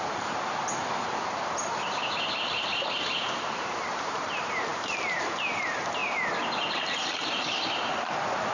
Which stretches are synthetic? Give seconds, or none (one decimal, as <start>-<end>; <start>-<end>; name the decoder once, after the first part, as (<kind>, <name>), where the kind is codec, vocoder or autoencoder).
0.0-6.0 (vocoder, BigVGAN v2); 6.8-8.5